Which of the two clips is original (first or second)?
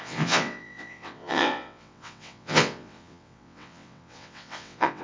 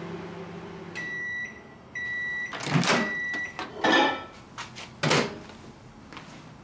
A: second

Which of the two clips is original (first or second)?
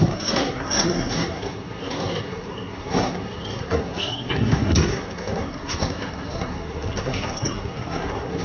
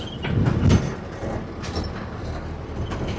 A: second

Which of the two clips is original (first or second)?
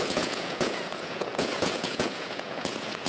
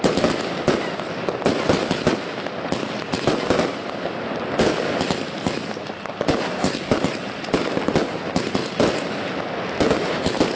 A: second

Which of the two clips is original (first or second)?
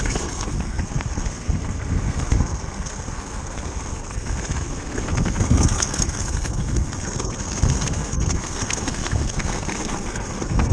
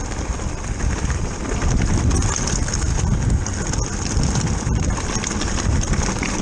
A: second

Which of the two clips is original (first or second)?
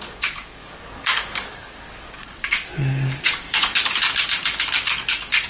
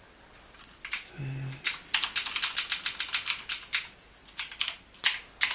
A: second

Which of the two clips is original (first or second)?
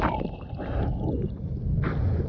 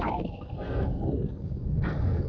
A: first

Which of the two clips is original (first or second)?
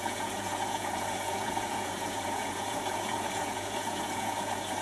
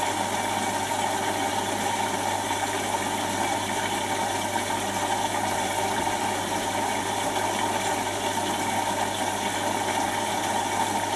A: second